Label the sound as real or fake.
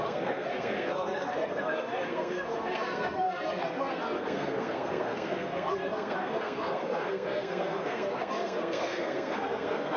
fake